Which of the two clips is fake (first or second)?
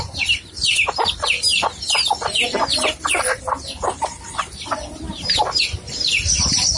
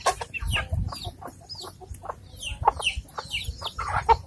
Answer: first